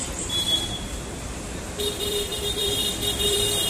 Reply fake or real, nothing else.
fake